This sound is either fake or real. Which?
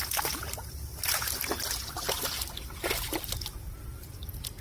real